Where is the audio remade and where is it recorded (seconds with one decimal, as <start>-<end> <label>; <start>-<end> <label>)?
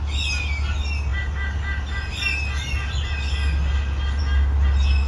0.0-5.1 recorded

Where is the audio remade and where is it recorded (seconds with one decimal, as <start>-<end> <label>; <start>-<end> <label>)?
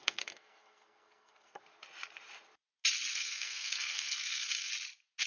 0.0-1.6 remade; 1.6-3.1 recorded; 3.1-4.7 remade; 4.7-5.3 recorded